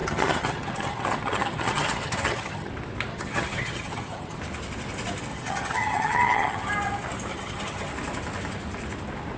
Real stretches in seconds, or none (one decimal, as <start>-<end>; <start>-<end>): 2.7-3.1; 4.4-5.3; 6.7-7.3; 7.9-9.4